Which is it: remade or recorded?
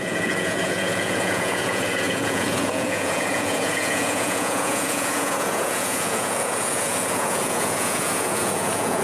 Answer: remade